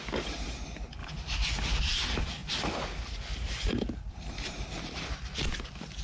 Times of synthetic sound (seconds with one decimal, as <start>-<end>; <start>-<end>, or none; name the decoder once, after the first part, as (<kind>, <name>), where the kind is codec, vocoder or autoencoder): none